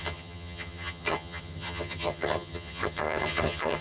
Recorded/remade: remade